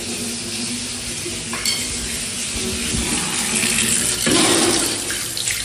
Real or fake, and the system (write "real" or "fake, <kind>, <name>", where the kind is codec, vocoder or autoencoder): real